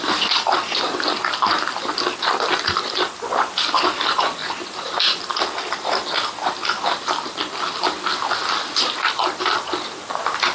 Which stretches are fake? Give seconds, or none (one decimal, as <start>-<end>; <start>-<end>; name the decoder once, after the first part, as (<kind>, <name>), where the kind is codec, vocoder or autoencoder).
none